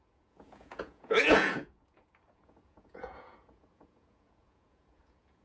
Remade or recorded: remade